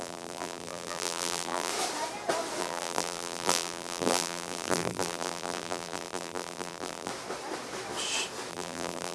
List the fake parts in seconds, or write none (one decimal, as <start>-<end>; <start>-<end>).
0.0-1.7; 2.6-7.1; 8.5-9.1